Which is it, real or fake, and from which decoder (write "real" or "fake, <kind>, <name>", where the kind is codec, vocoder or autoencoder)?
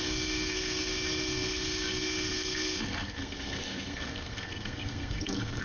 fake, codec, SNAC